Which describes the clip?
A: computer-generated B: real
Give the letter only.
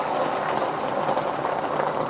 B